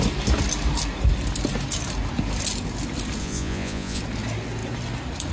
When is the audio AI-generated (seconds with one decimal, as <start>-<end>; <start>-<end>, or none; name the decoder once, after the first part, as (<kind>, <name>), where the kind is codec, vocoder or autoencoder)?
3.2-4.0 (vocoder, Vocos)